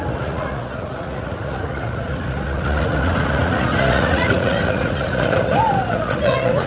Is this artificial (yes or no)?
yes